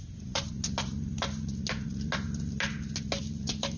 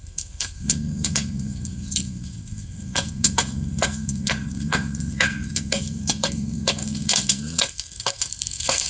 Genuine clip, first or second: first